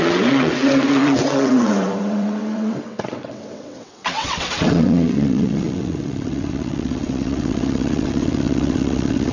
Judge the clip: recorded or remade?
remade